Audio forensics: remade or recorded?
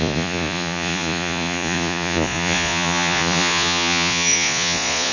remade